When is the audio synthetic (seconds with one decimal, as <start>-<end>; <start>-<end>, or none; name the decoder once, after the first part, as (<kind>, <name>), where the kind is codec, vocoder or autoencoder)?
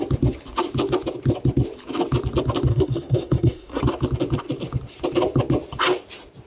2.7-3.8 (codec, SNAC)